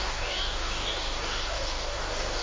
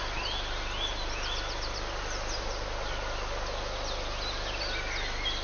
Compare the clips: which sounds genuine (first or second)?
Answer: second